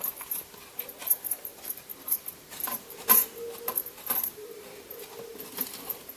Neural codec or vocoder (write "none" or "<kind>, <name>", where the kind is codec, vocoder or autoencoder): vocoder, BigVGAN v2